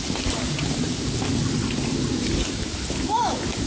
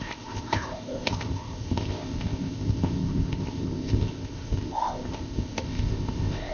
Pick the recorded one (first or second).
first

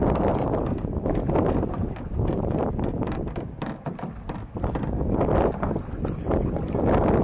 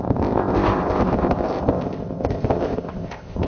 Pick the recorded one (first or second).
first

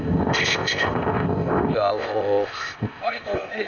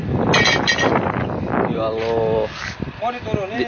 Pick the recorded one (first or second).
second